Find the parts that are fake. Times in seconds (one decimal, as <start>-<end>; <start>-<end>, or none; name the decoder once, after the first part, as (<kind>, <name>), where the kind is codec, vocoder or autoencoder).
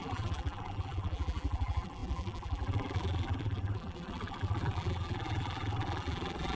0.0-6.6 (vocoder, BigVGAN v2)